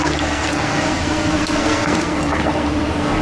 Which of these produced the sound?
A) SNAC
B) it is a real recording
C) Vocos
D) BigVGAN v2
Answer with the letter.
A